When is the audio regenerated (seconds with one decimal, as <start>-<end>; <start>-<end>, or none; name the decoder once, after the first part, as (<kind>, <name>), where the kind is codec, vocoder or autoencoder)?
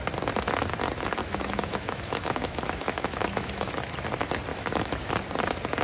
1.2-3.7 (autoencoder, DAC-VAE); 4.5-5.1